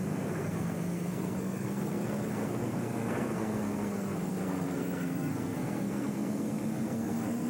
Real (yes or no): no